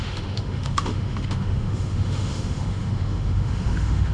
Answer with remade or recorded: remade